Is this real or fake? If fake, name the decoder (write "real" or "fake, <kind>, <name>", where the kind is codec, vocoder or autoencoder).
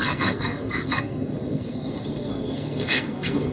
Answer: fake, codec, SNAC